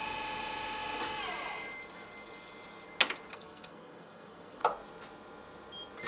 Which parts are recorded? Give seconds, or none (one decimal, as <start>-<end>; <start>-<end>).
0.0-3.3; 4.6-6.1